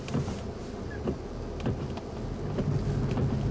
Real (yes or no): yes